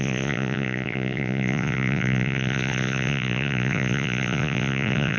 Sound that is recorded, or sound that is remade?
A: remade